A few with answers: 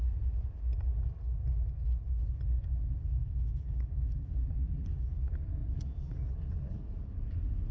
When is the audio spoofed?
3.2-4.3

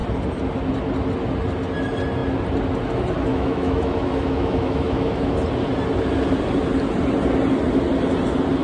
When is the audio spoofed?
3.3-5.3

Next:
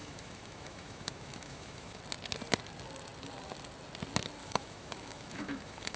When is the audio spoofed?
0.0-2.0; 4.4-6.0